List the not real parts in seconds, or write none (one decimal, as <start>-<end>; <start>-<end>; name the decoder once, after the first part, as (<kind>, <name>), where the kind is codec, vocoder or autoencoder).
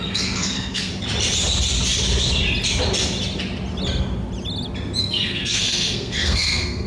0.0-0.9 (codec, SNAC); 5.0-6.9